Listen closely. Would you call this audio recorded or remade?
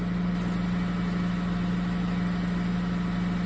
recorded